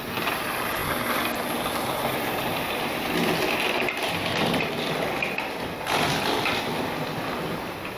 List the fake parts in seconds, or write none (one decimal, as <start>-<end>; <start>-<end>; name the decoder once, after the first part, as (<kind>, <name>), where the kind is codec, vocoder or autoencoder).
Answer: none